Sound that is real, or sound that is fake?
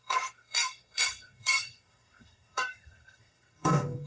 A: fake